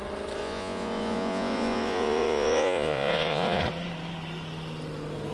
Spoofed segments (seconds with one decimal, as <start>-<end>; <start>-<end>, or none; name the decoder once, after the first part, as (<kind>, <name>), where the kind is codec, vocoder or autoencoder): 0.4-3.6 (vocoder, Vocos)